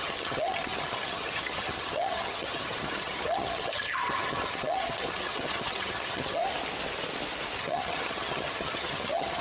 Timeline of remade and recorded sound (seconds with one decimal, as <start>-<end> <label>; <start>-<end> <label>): 0.0-6.4 remade; 6.4-7.6 recorded; 7.6-9.4 remade